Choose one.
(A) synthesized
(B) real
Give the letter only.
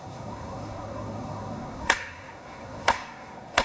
A